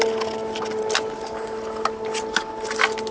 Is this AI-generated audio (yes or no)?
no